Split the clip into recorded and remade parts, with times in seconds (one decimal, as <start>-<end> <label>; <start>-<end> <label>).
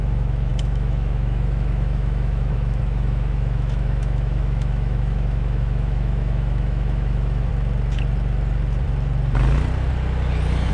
0.0-7.5 remade; 7.5-10.7 recorded